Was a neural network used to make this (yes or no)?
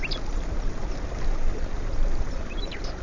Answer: no